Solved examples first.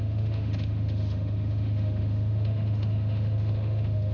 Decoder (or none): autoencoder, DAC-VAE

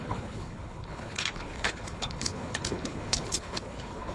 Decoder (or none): codec, HILCodec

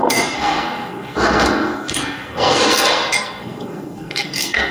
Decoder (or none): codec, SNAC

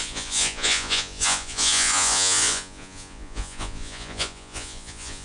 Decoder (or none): vocoder, Vocos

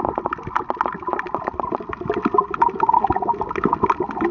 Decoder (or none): none